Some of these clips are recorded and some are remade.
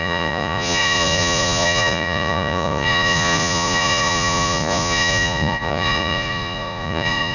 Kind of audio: remade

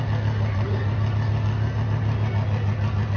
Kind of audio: recorded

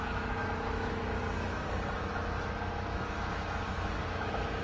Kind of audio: remade